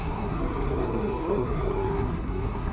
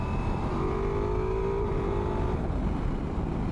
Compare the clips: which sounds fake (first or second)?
first